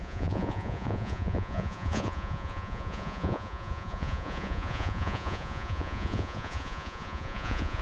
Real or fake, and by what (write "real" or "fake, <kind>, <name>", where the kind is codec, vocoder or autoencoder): fake, vocoder, Vocos